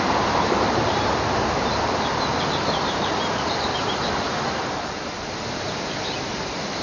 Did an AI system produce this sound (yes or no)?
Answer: yes